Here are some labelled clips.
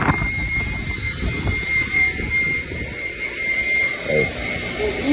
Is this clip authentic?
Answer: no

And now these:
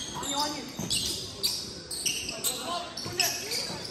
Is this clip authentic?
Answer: yes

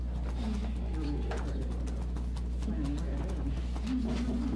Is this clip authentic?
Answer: yes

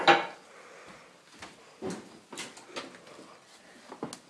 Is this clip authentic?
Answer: yes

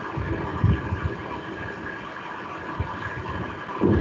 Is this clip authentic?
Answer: yes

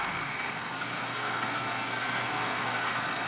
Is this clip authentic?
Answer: no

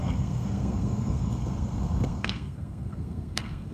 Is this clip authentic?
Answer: no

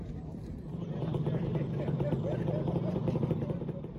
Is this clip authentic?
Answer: no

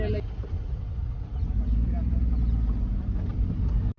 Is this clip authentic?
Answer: yes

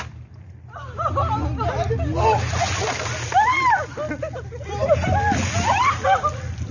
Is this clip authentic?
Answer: yes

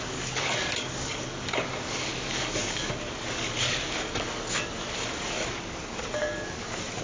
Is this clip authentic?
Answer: no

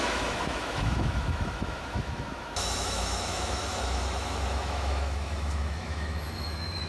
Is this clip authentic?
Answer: no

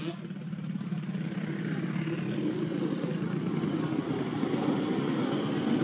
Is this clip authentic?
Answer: yes